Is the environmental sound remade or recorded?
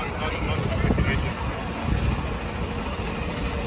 recorded